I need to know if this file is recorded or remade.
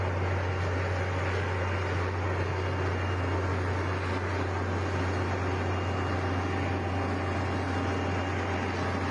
recorded